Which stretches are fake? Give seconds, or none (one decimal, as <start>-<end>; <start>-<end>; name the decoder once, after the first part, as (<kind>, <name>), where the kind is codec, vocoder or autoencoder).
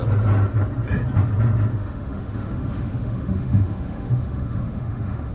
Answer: 1.7-5.3 (autoencoder, DAC-VAE)